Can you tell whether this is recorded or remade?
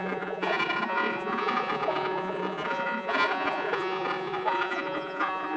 remade